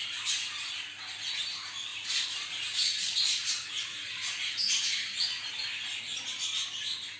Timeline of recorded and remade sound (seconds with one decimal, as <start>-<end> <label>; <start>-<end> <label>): 0.0-1.9 recorded; 1.9-5.5 remade; 5.5-7.2 recorded